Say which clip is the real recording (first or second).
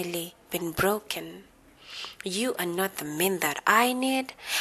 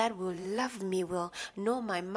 first